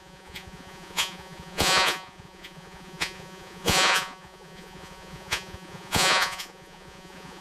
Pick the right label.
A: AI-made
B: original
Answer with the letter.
A